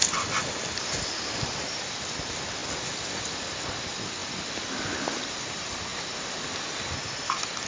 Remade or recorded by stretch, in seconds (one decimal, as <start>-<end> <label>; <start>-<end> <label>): 0.0-7.7 recorded